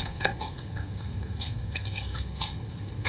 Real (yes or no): no